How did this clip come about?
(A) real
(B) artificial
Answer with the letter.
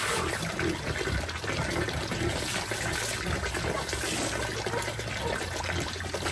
A